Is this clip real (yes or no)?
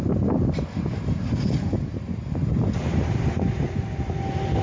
yes